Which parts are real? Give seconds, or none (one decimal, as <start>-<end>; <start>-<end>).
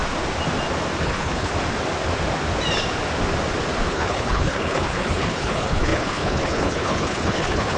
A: 0.0-1.0; 1.5-3.9